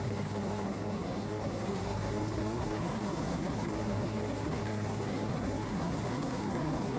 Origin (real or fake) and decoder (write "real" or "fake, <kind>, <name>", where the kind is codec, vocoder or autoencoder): fake, codec, SNAC